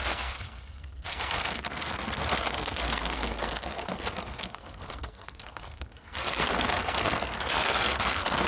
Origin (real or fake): fake